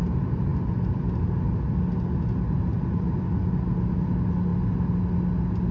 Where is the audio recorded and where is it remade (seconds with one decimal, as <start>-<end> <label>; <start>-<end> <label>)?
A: 0.0-5.7 recorded

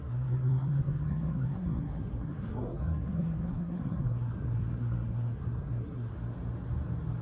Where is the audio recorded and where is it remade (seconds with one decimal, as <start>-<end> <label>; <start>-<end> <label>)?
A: 0.0-6.1 remade; 6.1-7.2 recorded

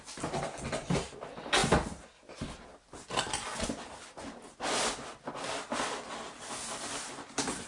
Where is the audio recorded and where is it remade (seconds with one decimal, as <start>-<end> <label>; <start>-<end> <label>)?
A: 0.0-7.7 recorded

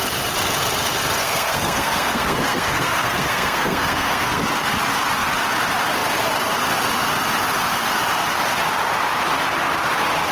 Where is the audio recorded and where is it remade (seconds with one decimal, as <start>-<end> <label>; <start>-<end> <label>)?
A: 0.0-1.2 recorded; 1.2-4.4 remade; 4.4-10.3 recorded

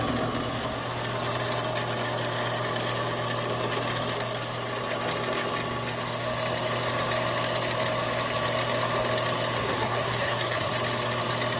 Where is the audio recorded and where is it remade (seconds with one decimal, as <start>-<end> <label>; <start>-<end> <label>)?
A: 0.0-9.6 recorded; 9.6-10.7 remade; 10.7-11.6 recorded